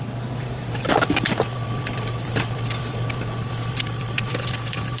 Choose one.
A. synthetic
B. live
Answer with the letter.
A